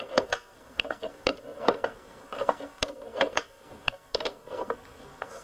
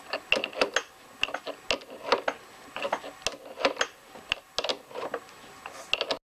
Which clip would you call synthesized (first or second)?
first